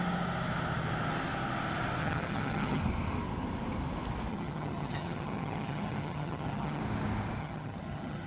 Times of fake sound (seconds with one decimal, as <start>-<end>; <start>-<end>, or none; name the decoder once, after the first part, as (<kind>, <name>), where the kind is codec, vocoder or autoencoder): 2.0-2.8 (vocoder, HiFi-GAN); 4.3-6.8; 7.4-8.3